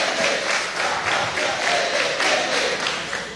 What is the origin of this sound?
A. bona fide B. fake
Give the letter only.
A